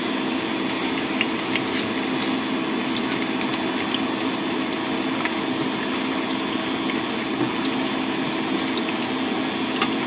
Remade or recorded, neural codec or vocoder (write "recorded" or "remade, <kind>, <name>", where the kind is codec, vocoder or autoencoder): recorded